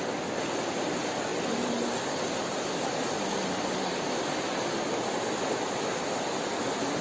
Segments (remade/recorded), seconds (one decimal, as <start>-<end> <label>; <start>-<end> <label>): 0.0-7.0 recorded